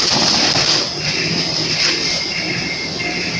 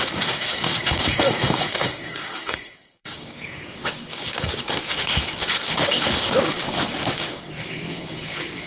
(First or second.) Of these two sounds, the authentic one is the first